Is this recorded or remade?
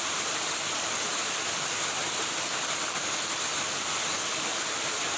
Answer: recorded